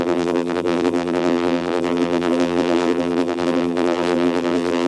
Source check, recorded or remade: remade